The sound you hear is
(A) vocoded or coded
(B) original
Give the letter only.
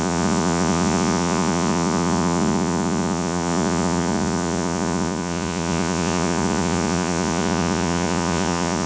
A